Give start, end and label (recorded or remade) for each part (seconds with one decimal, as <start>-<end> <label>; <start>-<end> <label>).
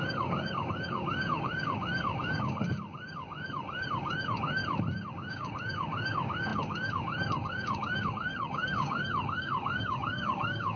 0.0-4.6 remade; 4.6-5.1 recorded; 5.1-10.8 remade